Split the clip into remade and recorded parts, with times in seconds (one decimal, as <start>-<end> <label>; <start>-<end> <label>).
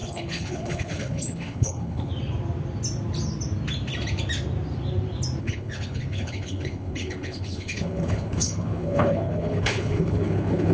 0.0-2.1 remade; 2.1-5.4 recorded; 5.4-10.7 remade